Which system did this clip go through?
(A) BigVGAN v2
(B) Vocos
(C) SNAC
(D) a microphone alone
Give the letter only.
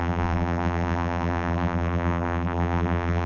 A